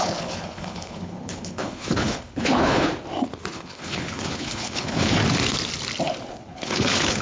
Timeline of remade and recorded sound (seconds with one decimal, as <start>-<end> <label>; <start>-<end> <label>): 0.0-2.9 remade; 2.9-3.5 recorded; 3.5-5.2 remade; 5.2-6.3 recorded; 6.3-7.2 remade